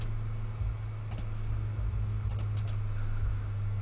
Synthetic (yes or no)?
no